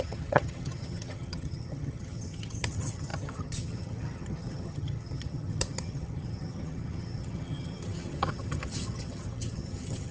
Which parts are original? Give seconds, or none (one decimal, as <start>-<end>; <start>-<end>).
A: none